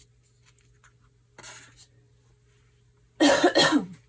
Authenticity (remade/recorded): recorded